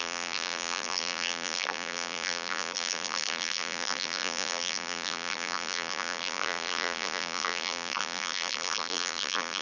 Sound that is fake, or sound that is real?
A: fake